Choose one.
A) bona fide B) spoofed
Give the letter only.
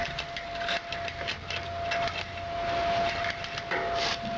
B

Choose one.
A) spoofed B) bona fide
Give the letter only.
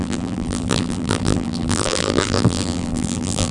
A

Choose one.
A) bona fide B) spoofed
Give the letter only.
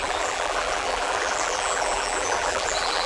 B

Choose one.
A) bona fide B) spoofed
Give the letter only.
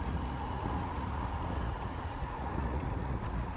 B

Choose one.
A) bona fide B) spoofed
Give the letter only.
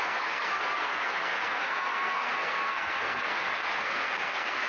B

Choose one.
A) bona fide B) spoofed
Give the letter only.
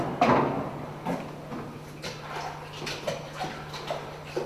A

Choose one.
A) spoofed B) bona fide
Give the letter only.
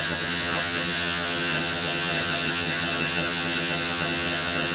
A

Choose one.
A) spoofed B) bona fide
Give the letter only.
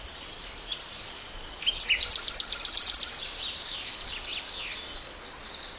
B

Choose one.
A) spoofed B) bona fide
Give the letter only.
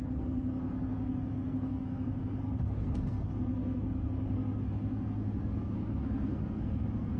A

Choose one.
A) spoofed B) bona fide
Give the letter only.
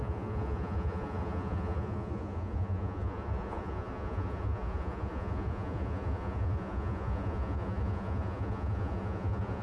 A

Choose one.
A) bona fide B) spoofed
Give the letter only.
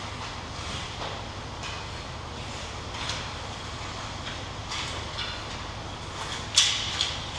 A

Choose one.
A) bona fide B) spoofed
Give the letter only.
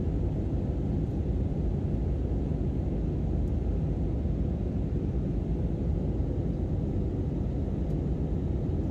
A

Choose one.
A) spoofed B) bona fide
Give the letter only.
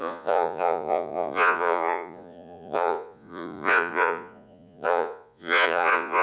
A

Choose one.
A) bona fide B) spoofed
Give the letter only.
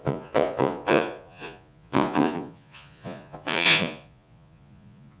B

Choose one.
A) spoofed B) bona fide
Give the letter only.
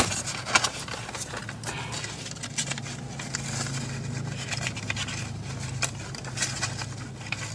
B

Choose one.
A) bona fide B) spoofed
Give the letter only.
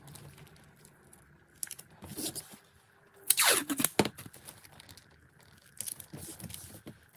A